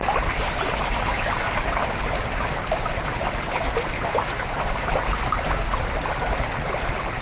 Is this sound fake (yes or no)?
no